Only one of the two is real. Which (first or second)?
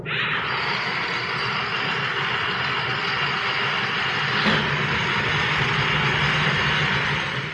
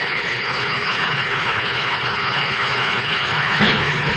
first